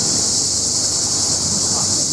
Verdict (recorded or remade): recorded